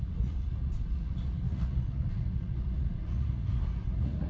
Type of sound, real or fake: fake